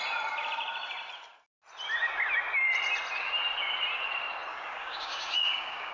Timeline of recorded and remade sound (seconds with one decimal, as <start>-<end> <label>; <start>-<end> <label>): 0.0-4.5 recorded; 4.5-5.9 remade